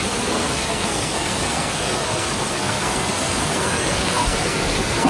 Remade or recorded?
remade